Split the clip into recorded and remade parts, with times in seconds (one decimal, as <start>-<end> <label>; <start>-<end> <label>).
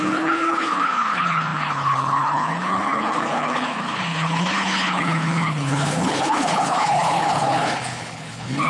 0.0-8.7 remade